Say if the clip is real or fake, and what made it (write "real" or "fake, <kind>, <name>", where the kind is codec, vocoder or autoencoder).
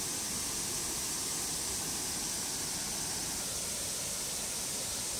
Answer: real